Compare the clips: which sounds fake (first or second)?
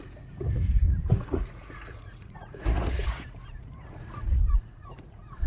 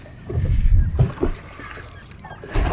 first